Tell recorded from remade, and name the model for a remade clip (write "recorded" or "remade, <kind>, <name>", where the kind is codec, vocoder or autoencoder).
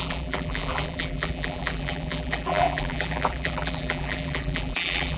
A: remade, vocoder, BigVGAN v2